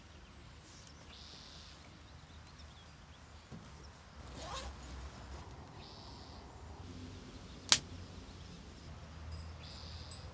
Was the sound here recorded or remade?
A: recorded